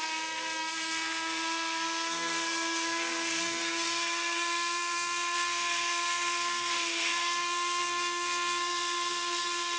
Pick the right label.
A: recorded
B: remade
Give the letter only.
B